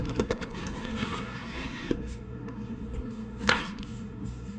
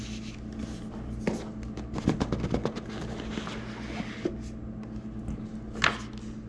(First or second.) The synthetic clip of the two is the first